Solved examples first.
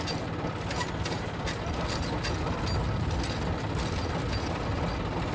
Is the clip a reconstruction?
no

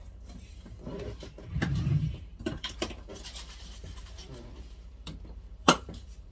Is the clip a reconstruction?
yes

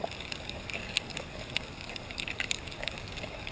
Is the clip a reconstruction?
yes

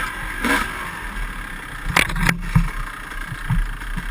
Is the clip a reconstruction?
no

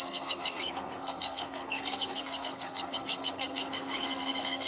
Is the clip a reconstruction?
yes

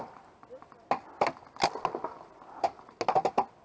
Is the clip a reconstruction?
no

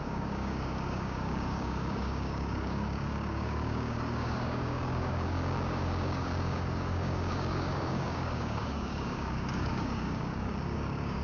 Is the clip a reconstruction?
yes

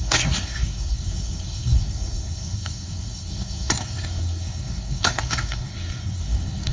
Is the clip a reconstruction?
yes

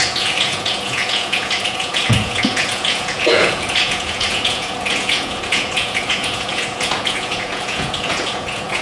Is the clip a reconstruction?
yes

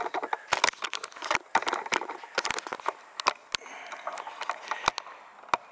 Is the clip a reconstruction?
no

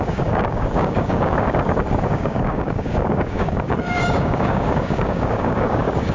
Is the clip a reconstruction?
yes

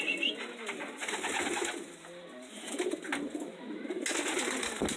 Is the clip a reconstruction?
no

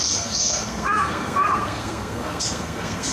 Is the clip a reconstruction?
yes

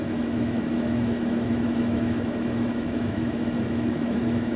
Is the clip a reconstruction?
yes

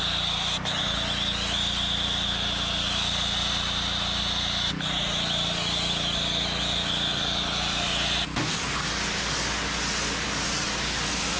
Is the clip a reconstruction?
no